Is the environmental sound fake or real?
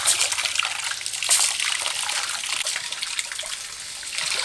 real